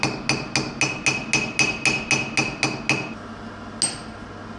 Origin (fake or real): real